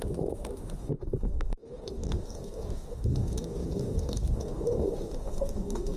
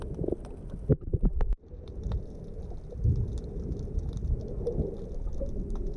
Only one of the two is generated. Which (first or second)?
first